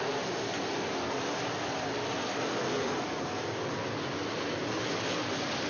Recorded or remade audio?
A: recorded